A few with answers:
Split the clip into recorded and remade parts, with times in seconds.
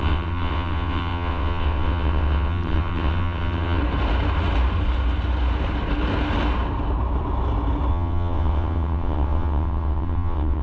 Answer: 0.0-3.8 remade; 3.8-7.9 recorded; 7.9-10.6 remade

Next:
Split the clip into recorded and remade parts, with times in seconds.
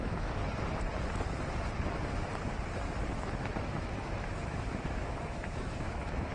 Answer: 0.0-0.4 remade; 0.4-3.2 recorded; 3.2-6.3 remade